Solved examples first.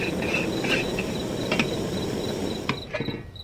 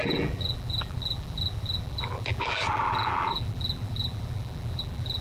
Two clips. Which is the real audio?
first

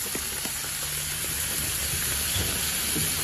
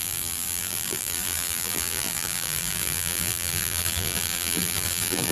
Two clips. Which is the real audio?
first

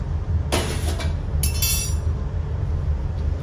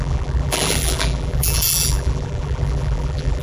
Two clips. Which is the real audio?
first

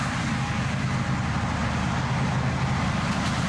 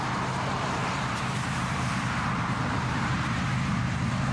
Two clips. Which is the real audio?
first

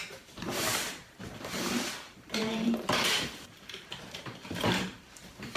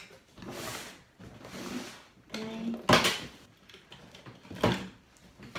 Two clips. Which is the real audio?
second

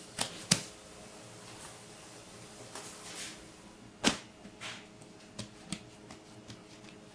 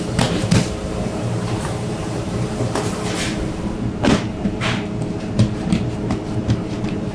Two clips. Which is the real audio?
first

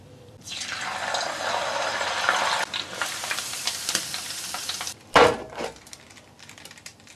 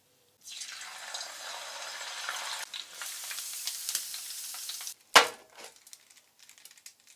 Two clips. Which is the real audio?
second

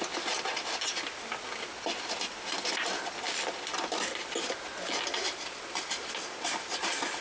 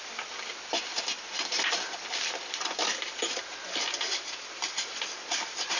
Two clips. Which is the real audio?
first